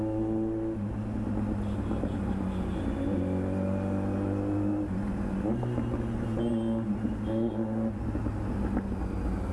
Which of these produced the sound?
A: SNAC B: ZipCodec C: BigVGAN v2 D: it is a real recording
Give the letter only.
D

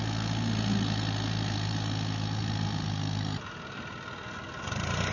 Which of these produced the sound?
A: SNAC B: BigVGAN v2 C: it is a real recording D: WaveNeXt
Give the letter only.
C